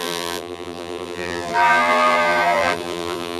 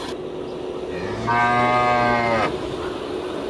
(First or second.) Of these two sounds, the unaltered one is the second